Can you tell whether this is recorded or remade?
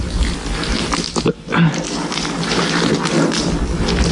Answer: recorded